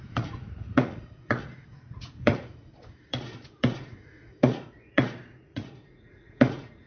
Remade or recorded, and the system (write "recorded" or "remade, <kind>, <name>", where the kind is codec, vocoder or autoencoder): remade, vocoder, Vocos